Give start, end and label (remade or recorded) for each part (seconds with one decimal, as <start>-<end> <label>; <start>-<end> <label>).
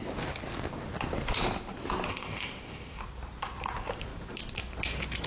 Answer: 0.0-2.1 recorded; 2.1-3.0 remade; 3.0-5.3 recorded